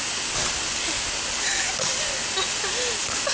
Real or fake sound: real